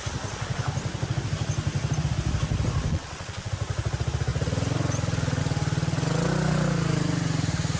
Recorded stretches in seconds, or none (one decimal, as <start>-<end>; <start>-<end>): 0.0-2.9; 3.5-7.8